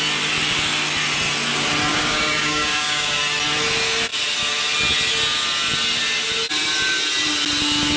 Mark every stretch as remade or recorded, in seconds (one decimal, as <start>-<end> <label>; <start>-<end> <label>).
0.0-1.9 recorded; 1.9-3.2 remade; 3.2-8.0 recorded